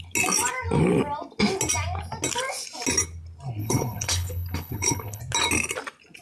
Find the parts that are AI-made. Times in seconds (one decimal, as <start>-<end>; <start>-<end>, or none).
3.6-5.2